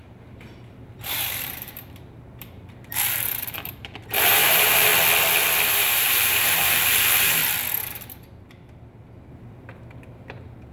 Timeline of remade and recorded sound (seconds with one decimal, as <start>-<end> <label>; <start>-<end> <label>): 0.0-4.9 remade; 4.9-5.7 recorded; 5.7-7.4 remade; 7.4-9.3 recorded; 9.3-10.7 remade